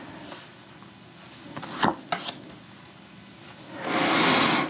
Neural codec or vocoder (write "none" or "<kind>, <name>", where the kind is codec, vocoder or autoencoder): none